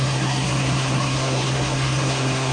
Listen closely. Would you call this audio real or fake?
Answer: fake